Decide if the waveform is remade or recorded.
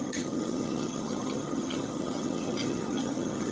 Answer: remade